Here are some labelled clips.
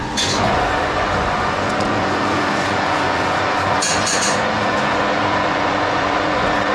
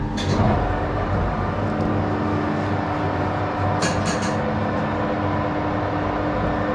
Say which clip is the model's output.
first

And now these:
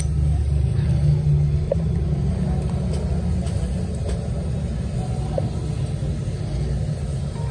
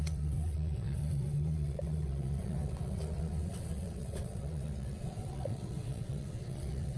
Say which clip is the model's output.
second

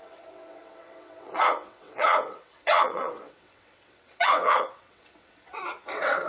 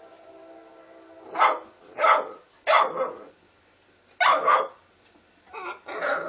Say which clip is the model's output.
first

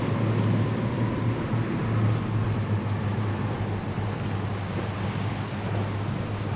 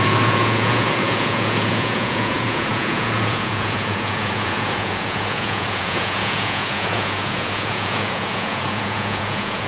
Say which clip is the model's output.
second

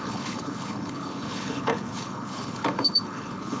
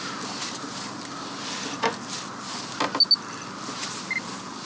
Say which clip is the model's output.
first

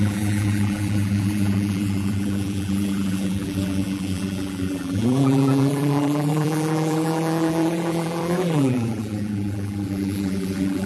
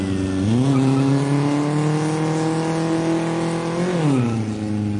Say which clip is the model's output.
first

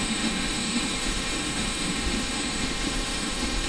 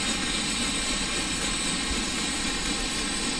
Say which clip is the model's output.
first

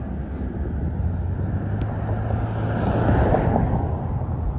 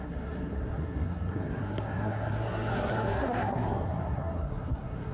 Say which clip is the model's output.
second